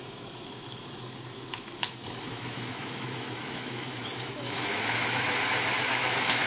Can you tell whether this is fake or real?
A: fake